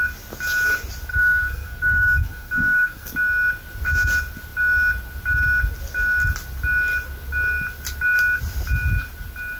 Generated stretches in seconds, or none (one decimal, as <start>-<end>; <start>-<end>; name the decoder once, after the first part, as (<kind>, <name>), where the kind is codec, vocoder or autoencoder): 1.1-3.1 (codec, SNAC)